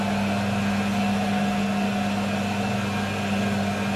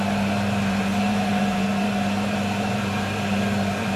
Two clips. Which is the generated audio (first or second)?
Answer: second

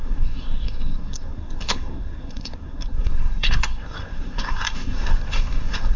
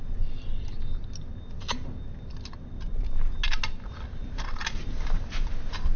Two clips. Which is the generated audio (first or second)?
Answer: first